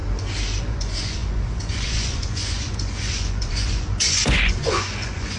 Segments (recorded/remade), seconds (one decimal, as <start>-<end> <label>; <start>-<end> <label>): 0.0-0.6 recorded; 0.6-5.4 remade